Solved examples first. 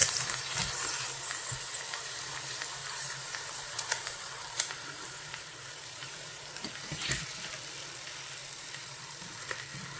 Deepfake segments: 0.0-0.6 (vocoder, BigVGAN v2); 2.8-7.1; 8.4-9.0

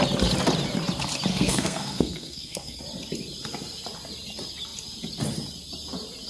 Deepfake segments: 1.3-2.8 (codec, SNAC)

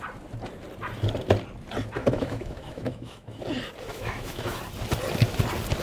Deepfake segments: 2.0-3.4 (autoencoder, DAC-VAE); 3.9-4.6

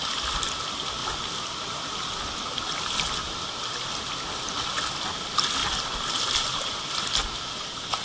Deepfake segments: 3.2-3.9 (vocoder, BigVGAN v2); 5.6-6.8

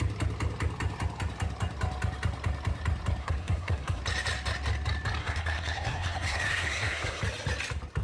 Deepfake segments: 3.2-4.0 (codec, SNAC); 5.2-7.2

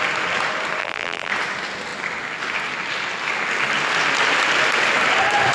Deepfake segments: 0.8-1.3 (vocoder, BigVGAN v2)

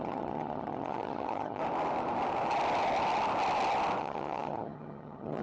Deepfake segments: 0.0-1.6 (vocoder, HiFi-GAN); 4.0-5.4